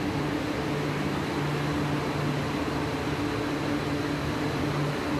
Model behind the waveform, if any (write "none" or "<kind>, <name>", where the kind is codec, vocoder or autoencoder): none